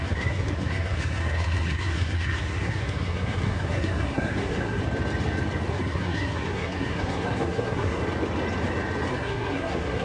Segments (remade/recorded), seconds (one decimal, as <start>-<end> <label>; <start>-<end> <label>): 0.0-4.8 remade; 4.8-5.7 recorded; 5.7-8.0 remade; 8.0-9.1 recorded; 9.1-10.0 remade